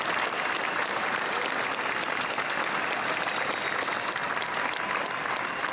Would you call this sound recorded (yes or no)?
yes